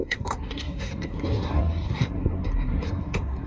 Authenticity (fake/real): fake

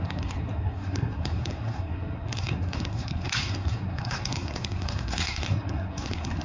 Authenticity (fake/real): fake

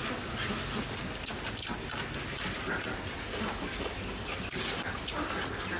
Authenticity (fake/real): real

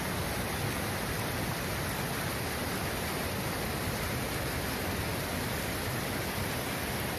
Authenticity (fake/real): real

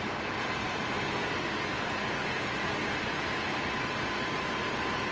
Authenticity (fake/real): real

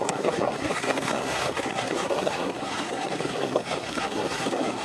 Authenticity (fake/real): fake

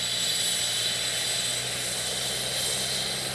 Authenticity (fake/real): real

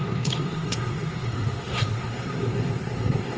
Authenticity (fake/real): fake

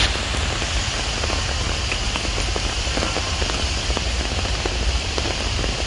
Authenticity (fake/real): real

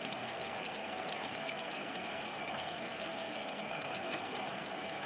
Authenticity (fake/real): fake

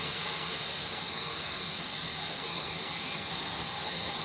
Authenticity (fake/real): fake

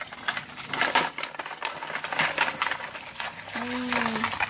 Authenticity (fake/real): real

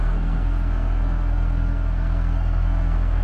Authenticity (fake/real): fake